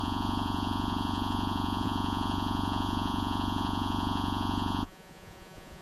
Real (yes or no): no